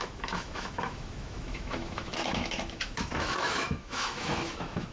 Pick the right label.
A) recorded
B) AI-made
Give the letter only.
B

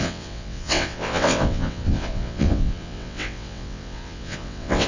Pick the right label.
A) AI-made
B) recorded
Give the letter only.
A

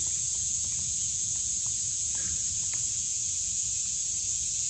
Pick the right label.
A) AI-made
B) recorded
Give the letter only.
A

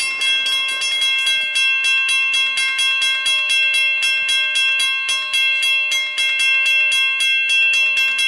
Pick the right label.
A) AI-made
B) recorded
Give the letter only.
B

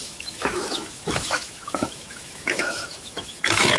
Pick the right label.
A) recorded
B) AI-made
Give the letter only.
B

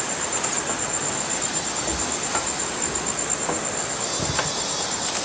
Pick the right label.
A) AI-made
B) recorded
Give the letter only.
B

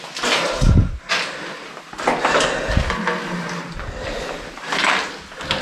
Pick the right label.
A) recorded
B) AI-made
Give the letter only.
A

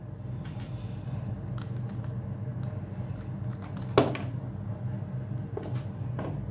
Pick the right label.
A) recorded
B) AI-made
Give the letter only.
A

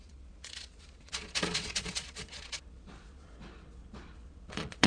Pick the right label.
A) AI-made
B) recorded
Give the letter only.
A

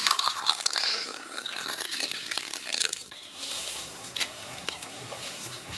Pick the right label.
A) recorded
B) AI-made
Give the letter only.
B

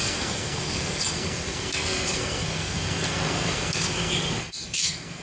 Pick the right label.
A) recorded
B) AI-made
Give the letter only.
B